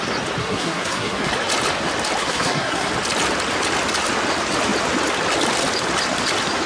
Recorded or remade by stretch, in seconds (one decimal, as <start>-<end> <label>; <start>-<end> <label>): 0.0-0.4 recorded; 0.4-1.3 remade; 1.3-2.2 recorded; 2.2-2.9 remade; 2.9-6.7 recorded